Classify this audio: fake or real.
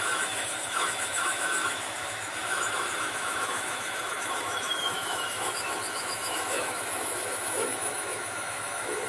fake